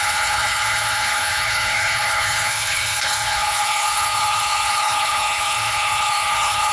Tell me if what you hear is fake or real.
fake